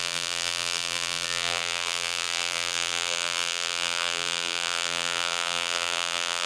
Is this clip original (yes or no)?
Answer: no